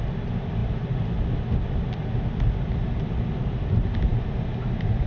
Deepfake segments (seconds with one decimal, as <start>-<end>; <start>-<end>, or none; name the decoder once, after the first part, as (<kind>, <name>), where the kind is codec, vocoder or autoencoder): none